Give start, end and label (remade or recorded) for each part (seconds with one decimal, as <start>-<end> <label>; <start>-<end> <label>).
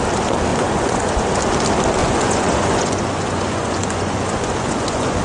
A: 0.0-0.5 recorded; 0.5-1.2 remade; 1.2-2.0 recorded; 2.0-5.2 remade